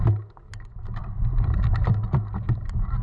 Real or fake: real